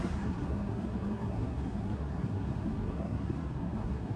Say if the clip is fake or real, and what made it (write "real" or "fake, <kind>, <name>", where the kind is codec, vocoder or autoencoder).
fake, codec, SNAC